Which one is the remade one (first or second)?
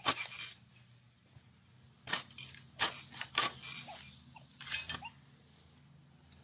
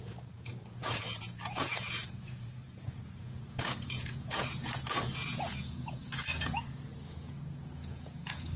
second